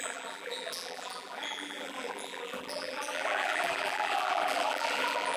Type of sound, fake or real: fake